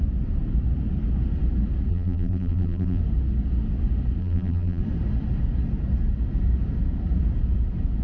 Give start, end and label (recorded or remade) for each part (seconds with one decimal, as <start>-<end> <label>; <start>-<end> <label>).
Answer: 0.0-1.9 recorded; 1.9-3.0 remade; 3.0-4.2 recorded; 4.2-4.8 remade; 4.8-8.0 recorded